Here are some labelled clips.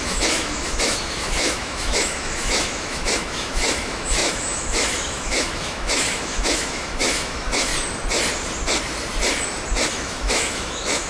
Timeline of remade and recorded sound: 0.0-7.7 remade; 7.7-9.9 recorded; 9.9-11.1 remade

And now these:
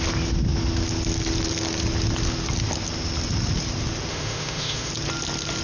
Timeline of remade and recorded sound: 0.0-4.1 recorded; 4.1-4.9 remade; 4.9-5.6 recorded

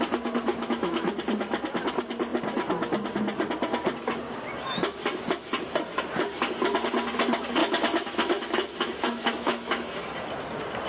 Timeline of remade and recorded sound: 0.0-0.5 recorded; 0.5-1.1 remade; 1.1-7.6 recorded; 7.6-10.1 remade; 10.1-10.9 recorded

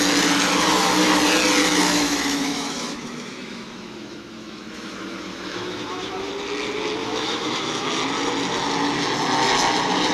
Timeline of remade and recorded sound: 0.0-1.6 recorded; 1.6-6.3 remade; 6.3-7.0 recorded; 7.0-7.9 remade; 7.9-10.1 recorded

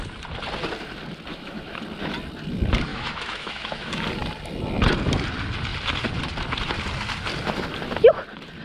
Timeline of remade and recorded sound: 0.0-1.3 recorded; 1.3-1.8 remade; 1.8-2.9 recorded; 2.9-4.0 remade; 4.0-8.6 recorded

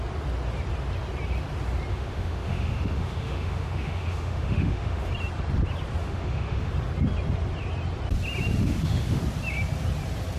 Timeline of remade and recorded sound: 0.0-1.9 recorded; 1.9-5.1 remade; 5.1-6.0 recorded; 6.0-6.7 remade; 6.7-8.6 recorded; 8.6-9.2 remade; 9.2-10.4 recorded